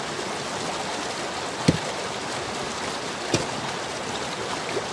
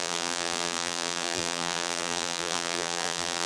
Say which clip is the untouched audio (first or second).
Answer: first